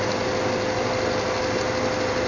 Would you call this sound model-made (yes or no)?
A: no